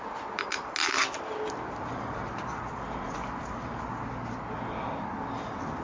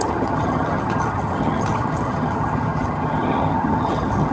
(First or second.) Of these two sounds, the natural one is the first